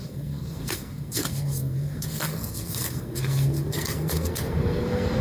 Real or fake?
fake